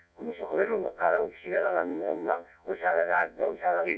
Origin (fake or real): fake